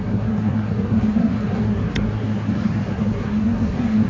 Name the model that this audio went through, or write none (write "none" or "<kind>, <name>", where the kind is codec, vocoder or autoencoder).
codec, SNAC